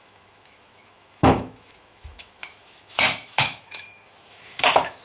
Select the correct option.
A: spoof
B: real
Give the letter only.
A